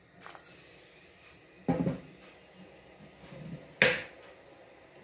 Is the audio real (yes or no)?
yes